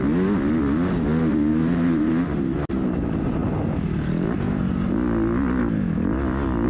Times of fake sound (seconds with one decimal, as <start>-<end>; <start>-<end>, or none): 1.5-2.1